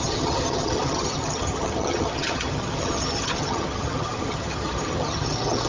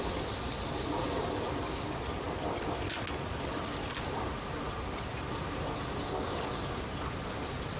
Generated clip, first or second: first